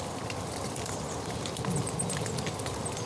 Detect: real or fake real